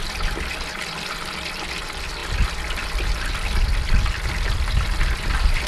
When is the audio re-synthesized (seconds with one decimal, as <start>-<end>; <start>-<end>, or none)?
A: none